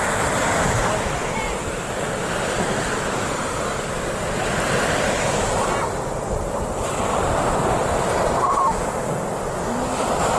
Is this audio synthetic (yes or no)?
no